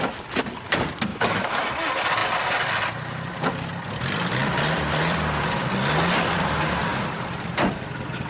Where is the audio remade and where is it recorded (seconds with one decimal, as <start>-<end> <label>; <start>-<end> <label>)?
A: 0.0-1.1 recorded; 1.1-1.6 remade; 1.6-8.3 recorded